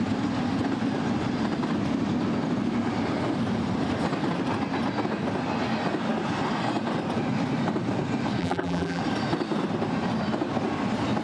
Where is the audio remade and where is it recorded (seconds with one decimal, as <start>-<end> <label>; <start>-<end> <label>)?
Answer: 0.0-8.4 recorded; 8.4-9.0 remade; 9.0-11.2 recorded